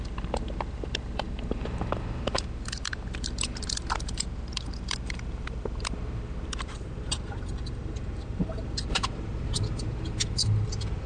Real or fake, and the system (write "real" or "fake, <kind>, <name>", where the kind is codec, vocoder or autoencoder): fake, vocoder, BigVGAN v2